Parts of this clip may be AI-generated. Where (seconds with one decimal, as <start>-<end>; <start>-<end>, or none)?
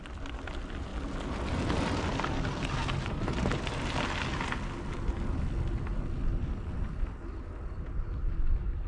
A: none